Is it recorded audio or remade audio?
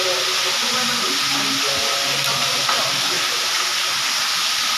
recorded